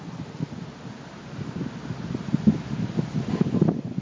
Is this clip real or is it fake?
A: real